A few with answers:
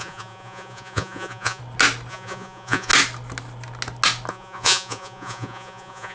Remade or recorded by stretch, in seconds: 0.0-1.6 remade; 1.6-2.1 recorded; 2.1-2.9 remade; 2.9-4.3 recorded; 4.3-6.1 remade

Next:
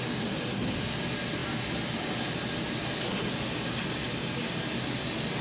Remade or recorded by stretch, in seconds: 0.0-5.4 recorded

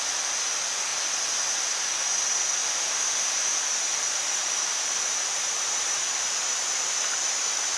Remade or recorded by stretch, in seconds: 0.0-2.6 recorded; 2.6-3.5 remade; 3.5-3.9 recorded; 3.9-6.0 remade; 6.0-7.8 recorded